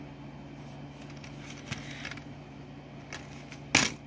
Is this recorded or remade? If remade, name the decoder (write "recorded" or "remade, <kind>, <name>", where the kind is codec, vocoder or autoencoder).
recorded